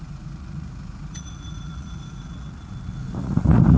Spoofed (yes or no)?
yes